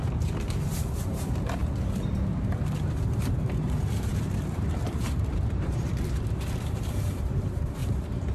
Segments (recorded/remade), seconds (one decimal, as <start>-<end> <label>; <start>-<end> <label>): 0.0-1.6 remade; 1.6-3.2 recorded; 3.2-8.3 remade